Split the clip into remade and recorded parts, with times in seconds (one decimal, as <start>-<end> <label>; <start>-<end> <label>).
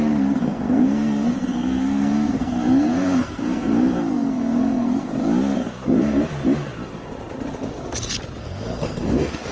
0.0-5.1 remade; 5.1-5.6 recorded; 5.6-6.3 remade; 6.3-8.4 recorded; 8.4-9.5 remade